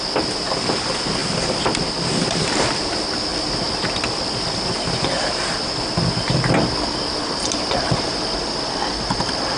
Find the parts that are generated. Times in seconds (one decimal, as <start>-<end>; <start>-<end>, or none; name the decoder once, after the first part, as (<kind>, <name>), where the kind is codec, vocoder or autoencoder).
none